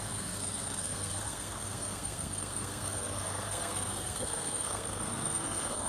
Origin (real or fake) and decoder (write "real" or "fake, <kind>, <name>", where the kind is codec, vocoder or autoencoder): fake, codec, SNAC